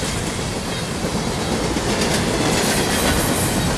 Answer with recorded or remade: recorded